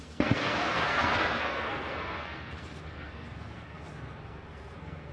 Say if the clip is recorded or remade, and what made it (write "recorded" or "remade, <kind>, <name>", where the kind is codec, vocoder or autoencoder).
remade, codec, SNAC